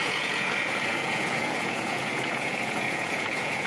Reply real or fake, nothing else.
fake